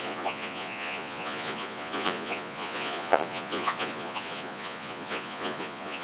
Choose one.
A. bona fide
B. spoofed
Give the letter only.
B